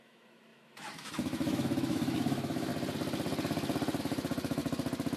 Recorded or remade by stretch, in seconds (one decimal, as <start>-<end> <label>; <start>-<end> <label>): 0.0-2.7 remade; 2.7-4.0 recorded; 4.0-4.6 remade; 4.6-5.2 recorded